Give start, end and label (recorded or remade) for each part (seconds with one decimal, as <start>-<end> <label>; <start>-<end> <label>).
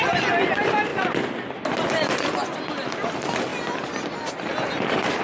0.0-5.2 recorded